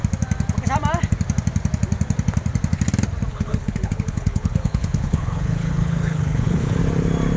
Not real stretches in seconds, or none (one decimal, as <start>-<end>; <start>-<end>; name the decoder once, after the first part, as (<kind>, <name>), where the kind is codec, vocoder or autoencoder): 3.3-6.8 (codec, HILCodec)